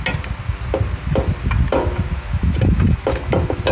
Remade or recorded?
recorded